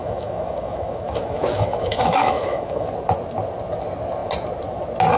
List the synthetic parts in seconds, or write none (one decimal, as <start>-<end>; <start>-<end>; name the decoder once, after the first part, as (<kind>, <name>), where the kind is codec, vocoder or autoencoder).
0.0-2.9 (autoencoder, DAC-VAE)